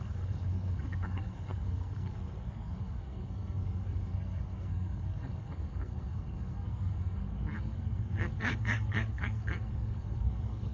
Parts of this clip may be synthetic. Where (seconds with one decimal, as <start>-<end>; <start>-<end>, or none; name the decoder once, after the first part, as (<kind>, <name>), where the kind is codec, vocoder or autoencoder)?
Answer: 0.0-10.7 (codec, SNAC)

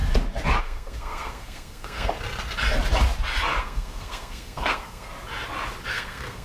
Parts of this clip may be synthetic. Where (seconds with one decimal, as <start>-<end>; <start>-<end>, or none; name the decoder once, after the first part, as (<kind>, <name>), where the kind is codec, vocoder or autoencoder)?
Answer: 0.6-2.1 (codec, SNAC); 3.6-5.1; 5.9-6.4